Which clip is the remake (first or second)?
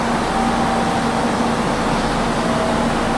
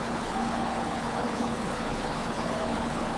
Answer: second